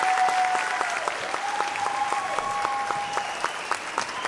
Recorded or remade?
recorded